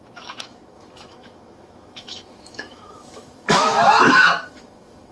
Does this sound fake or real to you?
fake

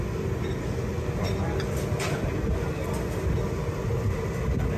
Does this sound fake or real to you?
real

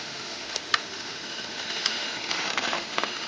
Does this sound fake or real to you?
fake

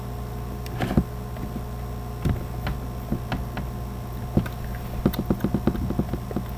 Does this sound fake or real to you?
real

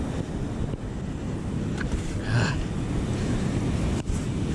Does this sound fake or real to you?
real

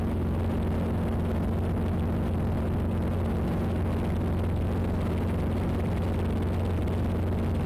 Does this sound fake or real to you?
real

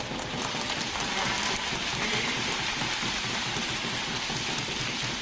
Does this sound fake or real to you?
real